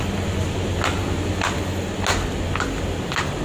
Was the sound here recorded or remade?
recorded